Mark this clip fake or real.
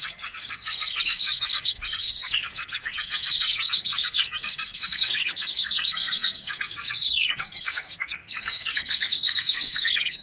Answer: fake